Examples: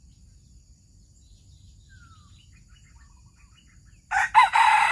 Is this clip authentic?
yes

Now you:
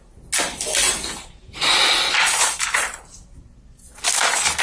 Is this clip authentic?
yes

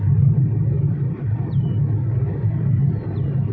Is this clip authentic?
yes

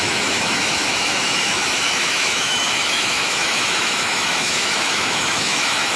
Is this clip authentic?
no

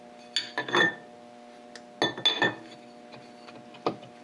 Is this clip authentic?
yes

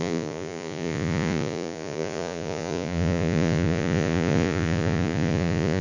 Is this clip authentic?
no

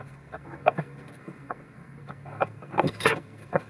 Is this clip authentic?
no